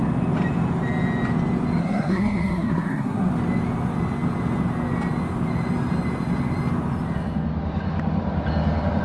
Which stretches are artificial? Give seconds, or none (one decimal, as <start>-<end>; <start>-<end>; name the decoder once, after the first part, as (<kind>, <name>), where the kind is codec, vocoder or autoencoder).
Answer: 1.8-3.3 (codec, SNAC)